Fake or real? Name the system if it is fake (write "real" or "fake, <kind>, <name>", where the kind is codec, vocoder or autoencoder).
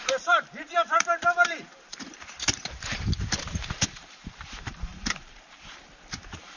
fake, vocoder, BigVGAN v2